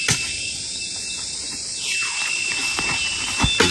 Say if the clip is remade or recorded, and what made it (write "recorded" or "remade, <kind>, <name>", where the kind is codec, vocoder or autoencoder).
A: recorded